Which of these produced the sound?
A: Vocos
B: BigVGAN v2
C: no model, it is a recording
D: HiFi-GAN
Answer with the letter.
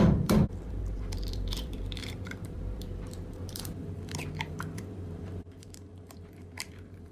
B